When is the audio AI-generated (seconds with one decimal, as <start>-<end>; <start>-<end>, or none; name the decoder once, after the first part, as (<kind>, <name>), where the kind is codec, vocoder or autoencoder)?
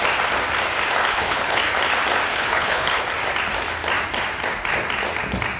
1.1-1.6 (codec, HILCodec); 2.3-3.0